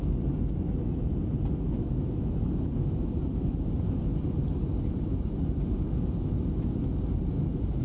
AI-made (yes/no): no